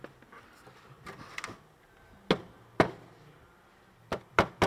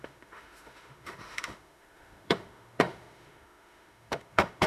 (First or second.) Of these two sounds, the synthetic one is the second